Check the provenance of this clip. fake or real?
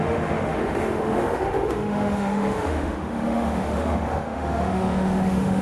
fake